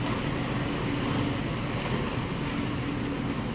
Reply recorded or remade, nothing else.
recorded